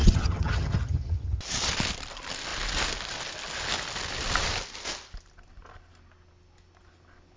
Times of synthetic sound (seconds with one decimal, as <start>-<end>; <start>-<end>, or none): 0.0-1.4